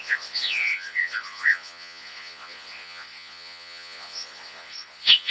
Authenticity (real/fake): fake